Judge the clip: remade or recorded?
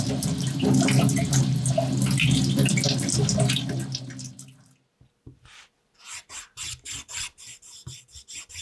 recorded